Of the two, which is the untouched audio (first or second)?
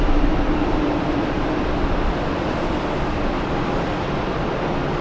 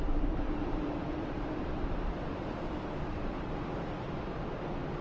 first